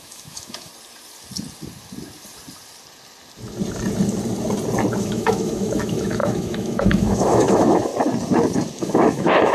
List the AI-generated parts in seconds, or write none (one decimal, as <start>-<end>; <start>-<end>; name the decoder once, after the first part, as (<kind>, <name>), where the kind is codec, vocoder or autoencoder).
0.0-0.7 (autoencoder, DAC-VAE); 5.0-7.9; 8.8-9.5